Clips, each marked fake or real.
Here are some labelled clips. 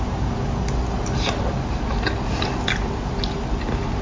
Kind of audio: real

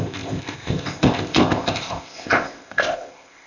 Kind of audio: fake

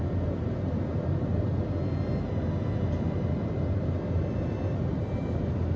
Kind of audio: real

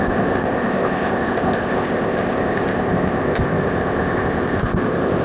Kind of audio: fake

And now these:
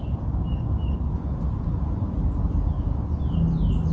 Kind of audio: real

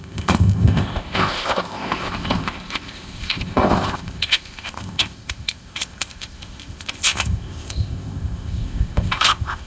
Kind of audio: fake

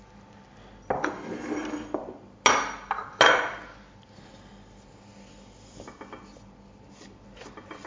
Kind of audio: real